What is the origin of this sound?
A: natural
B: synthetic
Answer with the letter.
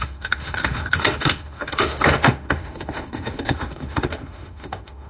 B